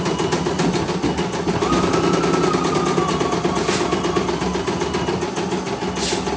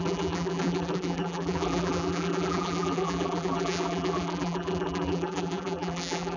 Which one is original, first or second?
first